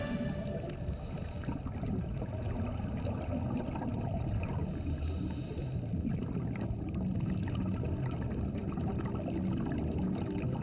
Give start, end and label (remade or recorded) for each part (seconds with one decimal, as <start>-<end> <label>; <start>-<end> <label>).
0.0-10.6 recorded